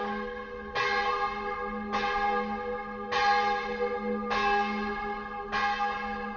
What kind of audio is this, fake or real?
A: real